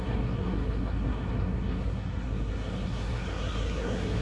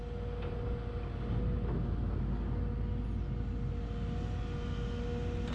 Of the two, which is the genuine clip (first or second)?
second